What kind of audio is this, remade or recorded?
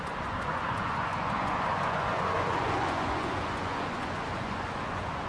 remade